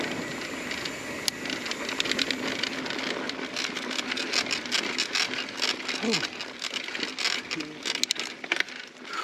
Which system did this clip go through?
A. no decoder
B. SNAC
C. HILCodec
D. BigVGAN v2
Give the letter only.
A